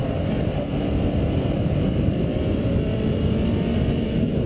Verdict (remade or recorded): remade